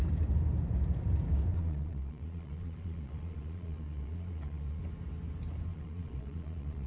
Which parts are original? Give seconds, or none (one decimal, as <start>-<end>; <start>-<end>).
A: 0.0-1.5; 4.8-5.7